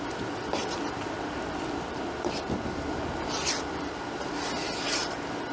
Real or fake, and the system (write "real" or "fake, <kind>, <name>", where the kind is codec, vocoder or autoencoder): fake, vocoder, BigVGAN v2